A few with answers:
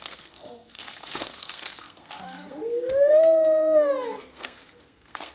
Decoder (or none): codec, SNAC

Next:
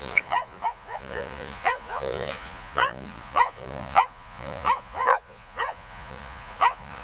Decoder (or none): vocoder, Vocos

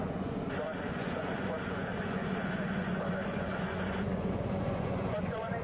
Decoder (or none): vocoder, Vocos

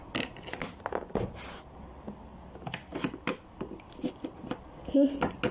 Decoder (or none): none